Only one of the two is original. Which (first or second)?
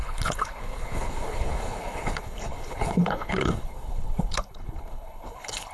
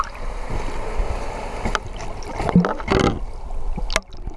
second